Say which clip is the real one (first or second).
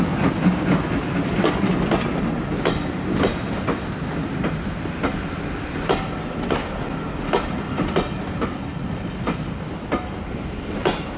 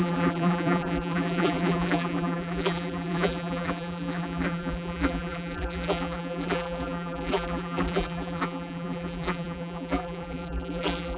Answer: first